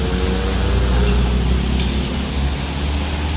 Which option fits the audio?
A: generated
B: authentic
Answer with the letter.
B